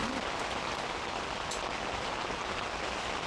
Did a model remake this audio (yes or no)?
no